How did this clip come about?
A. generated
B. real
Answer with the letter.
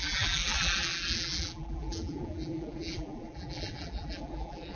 A